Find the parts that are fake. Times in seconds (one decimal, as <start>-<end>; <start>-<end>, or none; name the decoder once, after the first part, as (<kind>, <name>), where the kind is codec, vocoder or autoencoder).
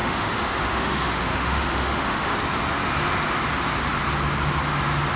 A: 0.0-2.3 (autoencoder, DAC-VAE)